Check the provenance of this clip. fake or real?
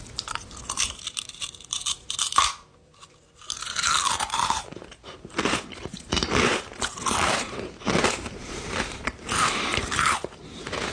fake